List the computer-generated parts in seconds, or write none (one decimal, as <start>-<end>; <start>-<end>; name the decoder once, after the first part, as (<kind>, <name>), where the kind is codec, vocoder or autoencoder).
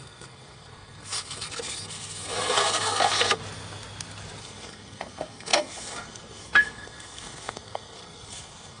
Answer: 0.0-3.4 (codec, SNAC); 4.4-8.8